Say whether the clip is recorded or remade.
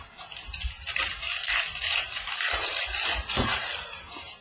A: remade